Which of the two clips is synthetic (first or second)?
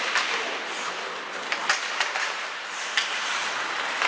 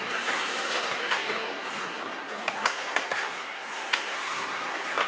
second